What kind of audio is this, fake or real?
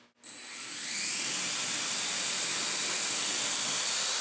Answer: real